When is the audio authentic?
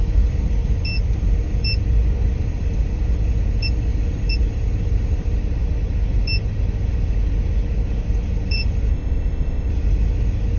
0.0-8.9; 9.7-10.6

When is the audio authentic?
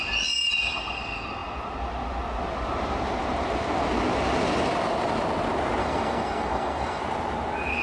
0.0-5.8; 7.0-7.8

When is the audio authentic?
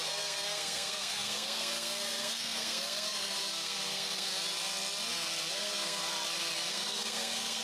4.3-5.5; 6.0-6.7